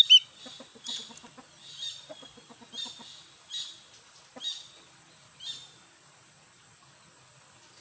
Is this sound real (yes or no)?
yes